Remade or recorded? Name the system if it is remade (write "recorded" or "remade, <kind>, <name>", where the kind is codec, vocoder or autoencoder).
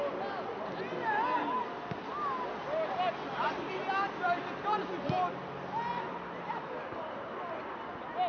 recorded